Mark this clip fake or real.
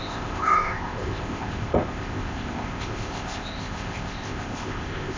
fake